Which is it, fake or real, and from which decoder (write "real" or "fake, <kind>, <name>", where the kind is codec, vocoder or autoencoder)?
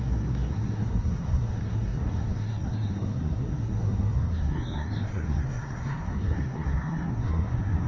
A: fake, codec, SNAC